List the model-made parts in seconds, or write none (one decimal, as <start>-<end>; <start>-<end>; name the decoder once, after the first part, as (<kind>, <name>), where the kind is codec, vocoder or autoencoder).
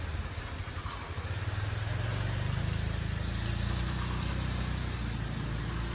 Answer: 3.2-4.3 (vocoder, BigVGAN v2)